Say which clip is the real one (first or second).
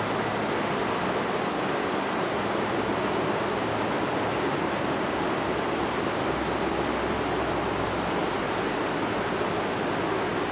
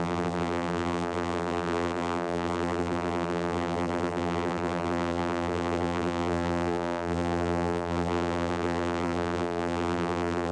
first